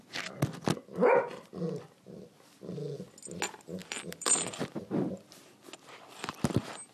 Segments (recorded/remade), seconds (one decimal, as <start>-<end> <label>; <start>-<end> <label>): 0.0-3.8 recorded; 3.8-4.5 remade; 4.5-6.9 recorded